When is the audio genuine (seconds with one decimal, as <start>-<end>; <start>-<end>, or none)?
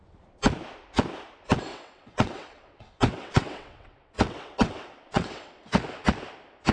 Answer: 0.0-1.7; 5.7-6.7